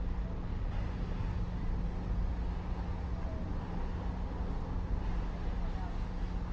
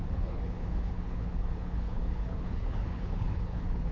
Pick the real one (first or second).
first